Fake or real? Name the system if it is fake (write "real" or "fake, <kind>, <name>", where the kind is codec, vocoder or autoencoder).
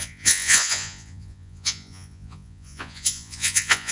fake, vocoder, Vocos